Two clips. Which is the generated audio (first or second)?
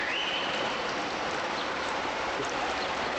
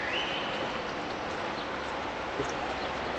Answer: first